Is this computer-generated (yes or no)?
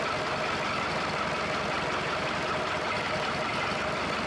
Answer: no